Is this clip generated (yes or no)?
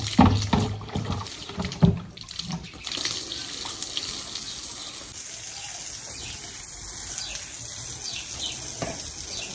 no